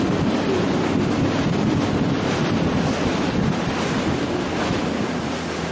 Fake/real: real